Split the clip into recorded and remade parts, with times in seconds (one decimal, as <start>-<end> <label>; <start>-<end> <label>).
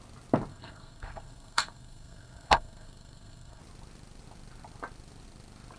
0.0-0.5 recorded; 0.5-3.6 remade; 3.6-5.8 recorded